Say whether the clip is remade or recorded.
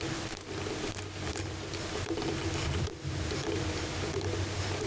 recorded